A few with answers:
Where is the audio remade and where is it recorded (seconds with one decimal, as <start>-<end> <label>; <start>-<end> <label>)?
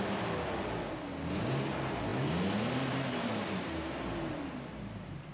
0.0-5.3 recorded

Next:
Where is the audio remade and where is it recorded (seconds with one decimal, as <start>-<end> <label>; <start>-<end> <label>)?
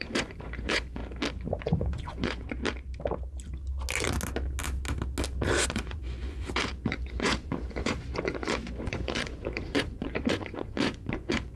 0.0-1.0 remade; 1.0-1.6 recorded; 1.6-2.6 remade; 2.6-5.7 recorded; 5.7-11.6 remade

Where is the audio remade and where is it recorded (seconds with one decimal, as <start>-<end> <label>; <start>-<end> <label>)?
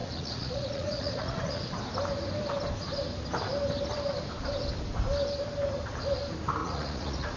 0.0-1.6 remade; 1.6-6.6 recorded; 6.6-7.4 remade